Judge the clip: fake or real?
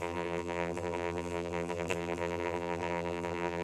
fake